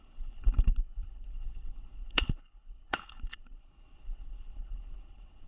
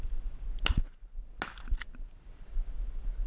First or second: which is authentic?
second